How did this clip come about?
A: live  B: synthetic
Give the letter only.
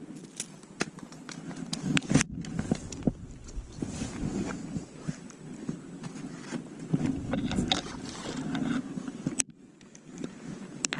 A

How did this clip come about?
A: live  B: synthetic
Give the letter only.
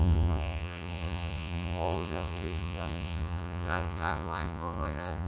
B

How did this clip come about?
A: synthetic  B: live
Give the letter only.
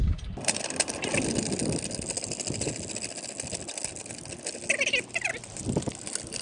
B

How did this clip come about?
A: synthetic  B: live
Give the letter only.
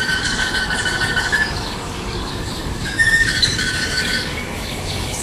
A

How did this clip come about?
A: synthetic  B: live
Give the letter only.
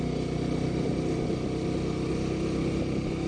B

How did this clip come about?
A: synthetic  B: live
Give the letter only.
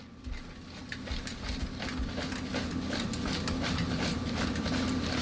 B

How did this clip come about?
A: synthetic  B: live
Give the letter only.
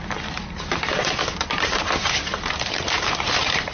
A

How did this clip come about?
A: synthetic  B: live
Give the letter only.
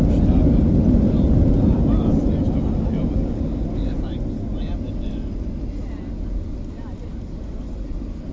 B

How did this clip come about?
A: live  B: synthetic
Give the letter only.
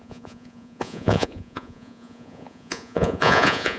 B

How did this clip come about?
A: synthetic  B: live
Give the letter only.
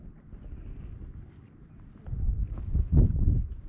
B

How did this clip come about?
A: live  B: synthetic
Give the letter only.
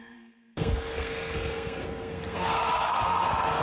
B